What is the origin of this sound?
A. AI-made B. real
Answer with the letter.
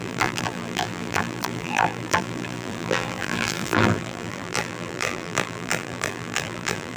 A